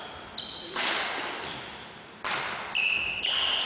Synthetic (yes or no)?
no